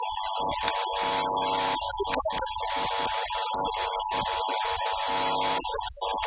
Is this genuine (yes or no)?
yes